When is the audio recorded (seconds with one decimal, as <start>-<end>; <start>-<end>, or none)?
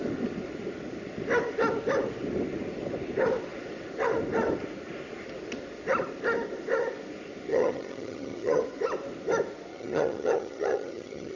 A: 0.0-7.5; 8.6-9.7